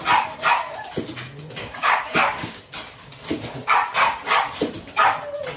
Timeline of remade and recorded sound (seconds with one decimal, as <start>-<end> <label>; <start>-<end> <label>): 0.0-1.6 recorded; 1.6-2.6 remade; 2.6-5.6 recorded